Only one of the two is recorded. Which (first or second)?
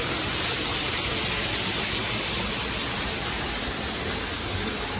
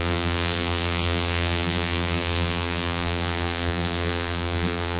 first